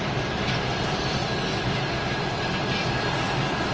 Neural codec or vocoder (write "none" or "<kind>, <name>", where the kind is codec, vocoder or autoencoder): none